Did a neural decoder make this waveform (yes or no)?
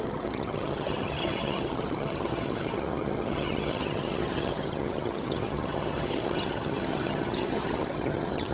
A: yes